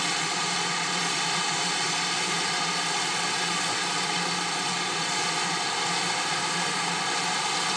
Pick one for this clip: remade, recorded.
recorded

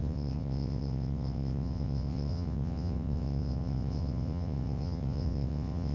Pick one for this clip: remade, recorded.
remade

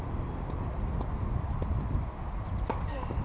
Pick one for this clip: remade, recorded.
recorded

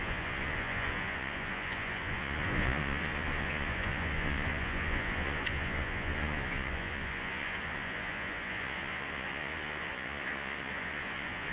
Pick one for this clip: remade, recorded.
remade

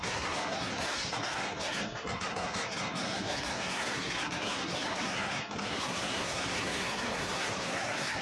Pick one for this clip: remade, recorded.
remade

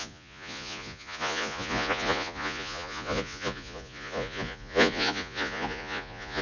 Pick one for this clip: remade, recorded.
remade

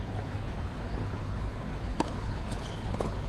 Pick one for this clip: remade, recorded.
remade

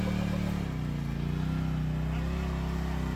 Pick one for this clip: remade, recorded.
recorded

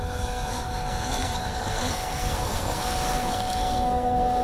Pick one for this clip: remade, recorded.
remade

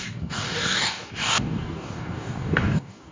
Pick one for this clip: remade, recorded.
remade